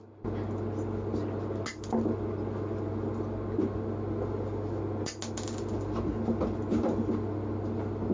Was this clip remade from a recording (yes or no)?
no